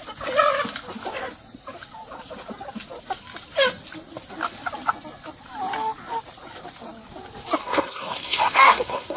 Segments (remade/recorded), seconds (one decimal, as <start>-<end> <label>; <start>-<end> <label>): 0.0-7.6 recorded; 7.6-9.2 remade